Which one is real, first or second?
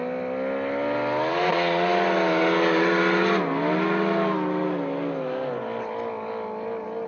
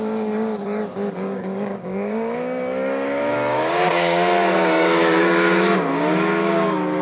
first